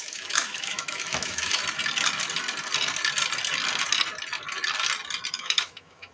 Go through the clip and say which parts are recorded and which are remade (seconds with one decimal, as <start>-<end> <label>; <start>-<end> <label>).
0.0-1.6 remade; 1.6-5.3 recorded; 5.3-6.1 remade